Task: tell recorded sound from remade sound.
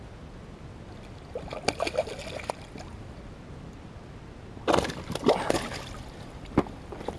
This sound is recorded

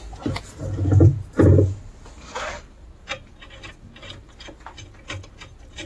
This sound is recorded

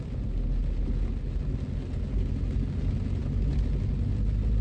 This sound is recorded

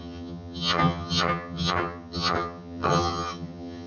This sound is remade